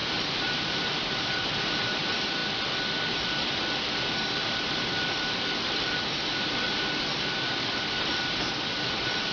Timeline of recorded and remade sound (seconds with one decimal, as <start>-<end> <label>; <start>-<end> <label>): 0.0-2.4 remade; 2.4-4.4 recorded; 4.4-9.3 remade